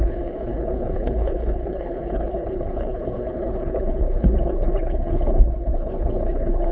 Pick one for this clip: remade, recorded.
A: remade